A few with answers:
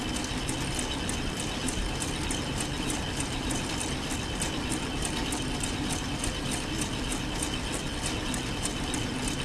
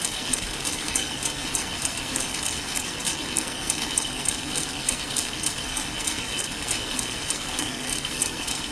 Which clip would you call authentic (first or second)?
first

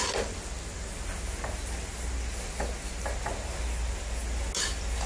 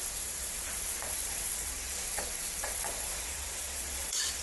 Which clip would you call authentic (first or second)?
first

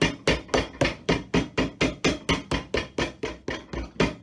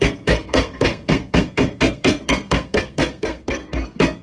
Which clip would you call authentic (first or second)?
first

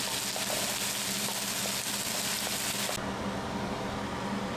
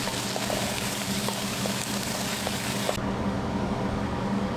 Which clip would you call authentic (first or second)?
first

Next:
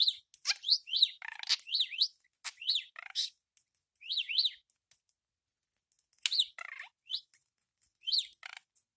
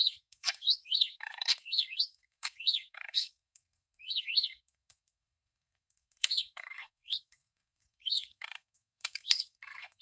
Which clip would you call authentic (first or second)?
first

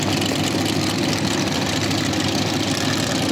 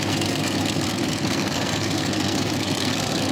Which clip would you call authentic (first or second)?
first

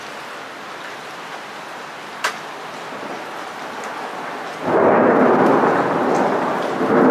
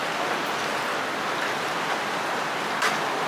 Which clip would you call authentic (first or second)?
first